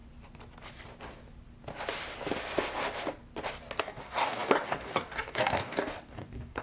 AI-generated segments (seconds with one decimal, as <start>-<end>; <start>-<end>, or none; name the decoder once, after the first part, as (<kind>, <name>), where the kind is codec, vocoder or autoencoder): 3.8-6.6 (codec, DAC)